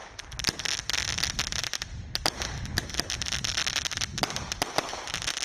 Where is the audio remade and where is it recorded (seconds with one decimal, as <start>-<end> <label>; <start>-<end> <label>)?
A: 0.0-5.4 recorded